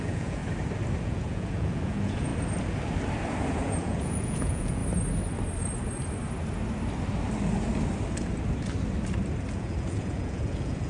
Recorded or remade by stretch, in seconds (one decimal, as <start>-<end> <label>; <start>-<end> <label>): 0.0-0.4 remade; 0.4-1.0 recorded; 1.0-2.3 remade; 2.3-3.5 recorded; 3.5-4.8 remade; 4.8-9.5 recorded; 9.5-10.9 remade